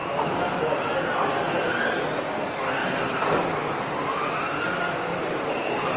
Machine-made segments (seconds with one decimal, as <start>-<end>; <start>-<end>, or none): 0.0-0.9; 5.1-6.0